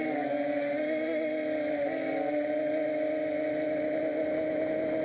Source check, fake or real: real